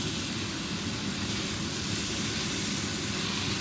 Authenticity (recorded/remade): recorded